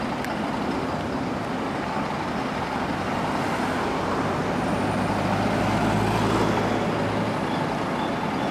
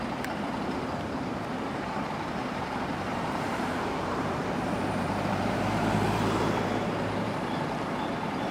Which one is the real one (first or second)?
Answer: first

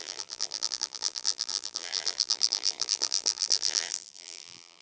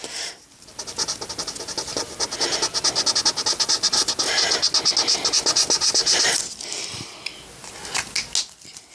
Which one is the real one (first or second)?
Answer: second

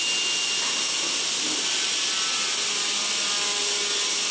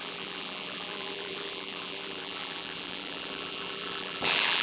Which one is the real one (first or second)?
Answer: first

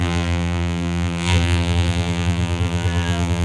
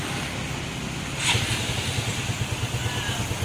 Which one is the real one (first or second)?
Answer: second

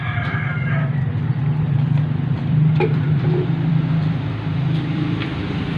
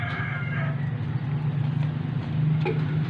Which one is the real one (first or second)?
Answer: second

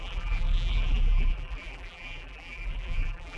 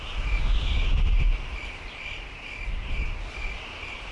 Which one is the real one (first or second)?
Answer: second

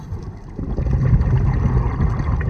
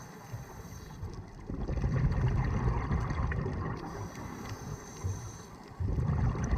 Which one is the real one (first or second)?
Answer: first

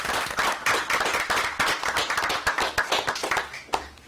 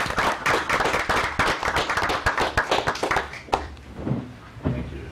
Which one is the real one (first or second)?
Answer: first